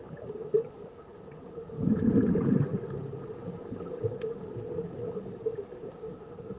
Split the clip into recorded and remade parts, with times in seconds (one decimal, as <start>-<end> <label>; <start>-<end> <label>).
0.0-1.1 remade; 1.1-1.9 recorded; 1.9-2.7 remade; 2.7-6.1 recorded; 6.1-6.6 remade